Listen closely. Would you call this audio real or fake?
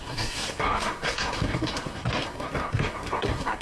fake